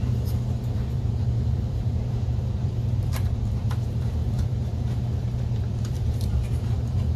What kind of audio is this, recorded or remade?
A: remade